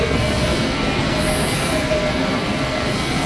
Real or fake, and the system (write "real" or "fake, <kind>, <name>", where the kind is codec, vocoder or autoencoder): fake, codec, SNAC